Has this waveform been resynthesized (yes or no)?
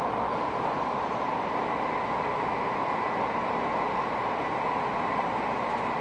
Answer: no